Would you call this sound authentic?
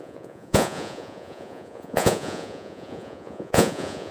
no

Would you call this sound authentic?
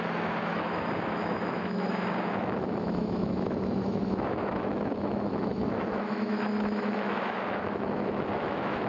no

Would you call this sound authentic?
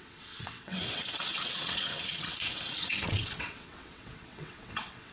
no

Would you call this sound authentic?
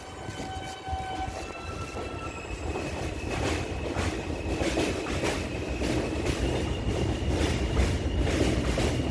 yes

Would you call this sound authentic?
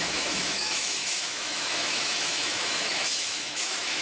no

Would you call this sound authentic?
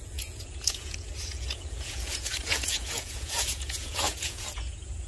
no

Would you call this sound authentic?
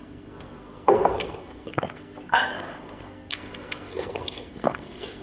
no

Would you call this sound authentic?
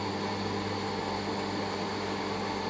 yes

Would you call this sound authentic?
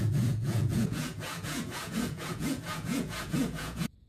no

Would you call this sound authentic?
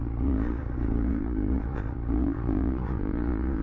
no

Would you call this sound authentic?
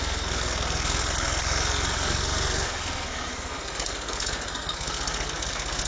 no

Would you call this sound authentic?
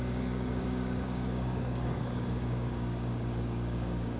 no